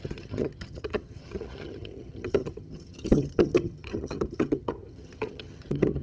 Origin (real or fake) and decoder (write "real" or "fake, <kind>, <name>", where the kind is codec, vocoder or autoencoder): fake, vocoder, HiFi-GAN